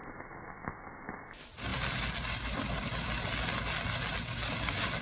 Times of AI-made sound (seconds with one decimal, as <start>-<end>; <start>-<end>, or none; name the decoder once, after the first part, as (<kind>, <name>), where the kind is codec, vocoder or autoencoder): none